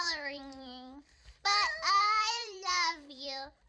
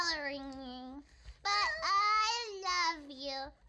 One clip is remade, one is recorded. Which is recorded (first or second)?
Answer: second